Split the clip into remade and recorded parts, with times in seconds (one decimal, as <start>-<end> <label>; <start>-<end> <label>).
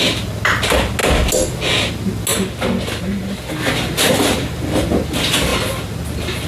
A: 0.0-6.5 recorded